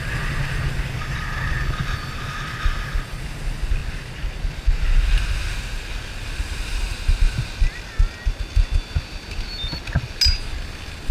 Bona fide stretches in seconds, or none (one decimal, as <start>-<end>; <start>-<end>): 0.0-11.1